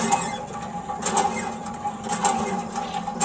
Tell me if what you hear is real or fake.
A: real